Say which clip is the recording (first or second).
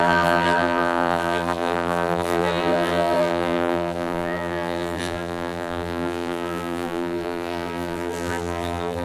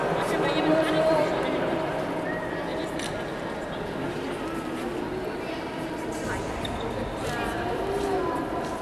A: second